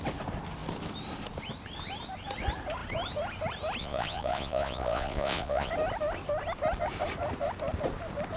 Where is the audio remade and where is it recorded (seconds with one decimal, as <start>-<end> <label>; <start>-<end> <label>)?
0.0-3.8 recorded; 3.8-5.7 remade; 5.7-8.4 recorded